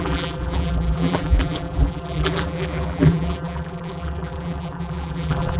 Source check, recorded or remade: remade